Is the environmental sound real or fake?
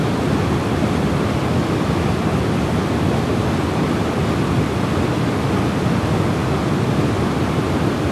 real